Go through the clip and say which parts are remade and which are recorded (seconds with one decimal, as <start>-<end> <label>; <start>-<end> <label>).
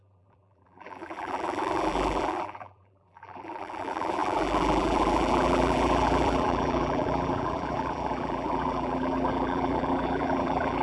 0.0-10.8 remade